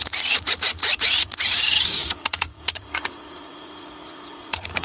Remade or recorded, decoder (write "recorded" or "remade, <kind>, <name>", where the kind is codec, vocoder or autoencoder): remade, vocoder, Vocos